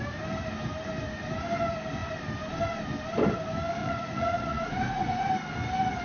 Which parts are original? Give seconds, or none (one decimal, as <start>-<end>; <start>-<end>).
0.0-3.8; 5.3-6.0